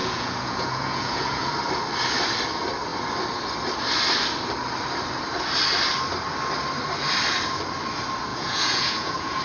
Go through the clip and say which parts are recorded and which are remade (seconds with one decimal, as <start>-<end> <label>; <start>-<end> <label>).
0.0-1.5 remade; 1.5-8.3 recorded; 8.3-9.4 remade